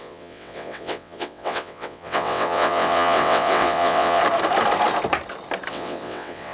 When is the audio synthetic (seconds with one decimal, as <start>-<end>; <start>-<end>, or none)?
0.0-4.2; 5.7-6.5